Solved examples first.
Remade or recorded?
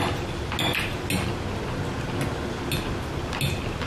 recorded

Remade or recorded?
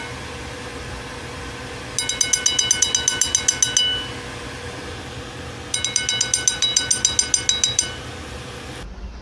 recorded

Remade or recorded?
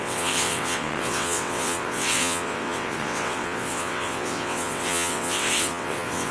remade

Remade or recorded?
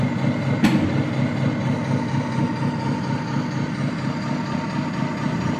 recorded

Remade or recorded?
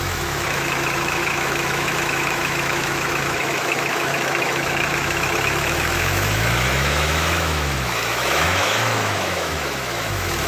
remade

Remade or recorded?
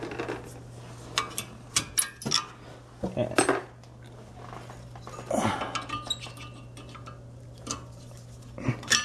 recorded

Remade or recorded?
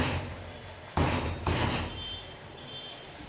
remade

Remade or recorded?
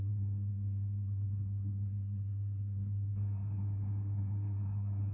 remade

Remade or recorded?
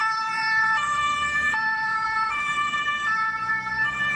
remade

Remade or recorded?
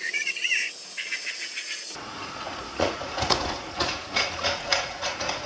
remade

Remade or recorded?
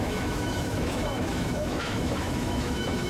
remade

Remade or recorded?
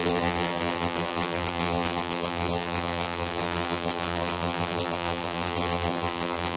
remade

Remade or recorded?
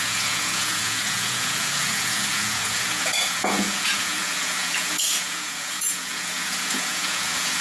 remade